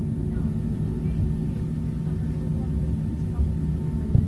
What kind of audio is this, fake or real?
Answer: real